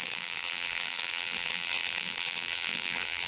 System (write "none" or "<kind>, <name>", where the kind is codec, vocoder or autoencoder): vocoder, BigVGAN v2